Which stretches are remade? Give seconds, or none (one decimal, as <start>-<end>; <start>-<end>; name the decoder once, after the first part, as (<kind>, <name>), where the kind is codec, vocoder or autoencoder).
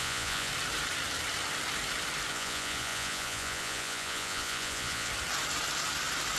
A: 0.0-0.5 (vocoder, Vocos); 2.3-5.1